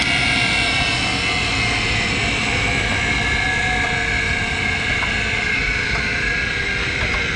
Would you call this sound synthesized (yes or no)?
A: no